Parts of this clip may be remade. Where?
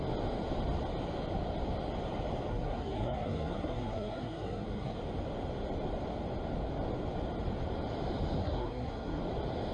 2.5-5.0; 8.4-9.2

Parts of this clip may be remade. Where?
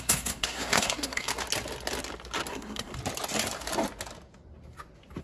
0.0-1.3; 2.5-2.9